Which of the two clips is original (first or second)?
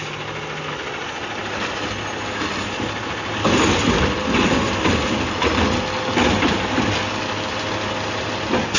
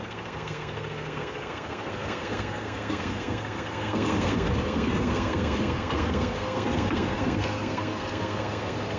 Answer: first